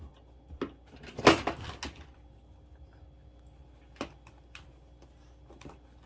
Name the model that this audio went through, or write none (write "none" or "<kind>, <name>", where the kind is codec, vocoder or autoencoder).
none